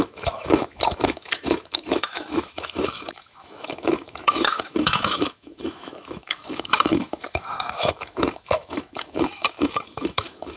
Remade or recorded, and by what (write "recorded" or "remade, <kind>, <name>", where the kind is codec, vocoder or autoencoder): remade, autoencoder, DAC-VAE